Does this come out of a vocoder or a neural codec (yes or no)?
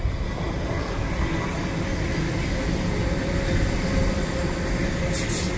no